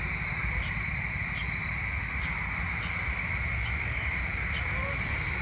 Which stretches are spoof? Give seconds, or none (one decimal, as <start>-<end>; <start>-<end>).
3.6-4.2